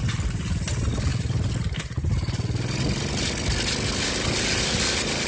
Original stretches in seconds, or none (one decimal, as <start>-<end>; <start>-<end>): 0.0-5.3